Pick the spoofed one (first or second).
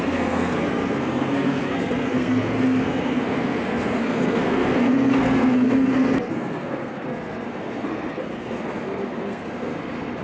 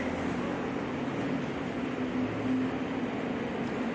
first